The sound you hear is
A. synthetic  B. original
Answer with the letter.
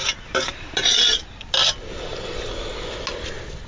B